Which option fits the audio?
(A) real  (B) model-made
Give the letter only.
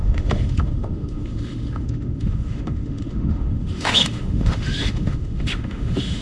B